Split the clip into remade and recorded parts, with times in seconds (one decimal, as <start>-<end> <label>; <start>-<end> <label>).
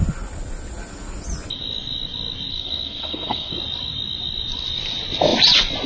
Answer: 0.0-2.5 recorded; 2.5-3.5 remade; 3.5-5.9 recorded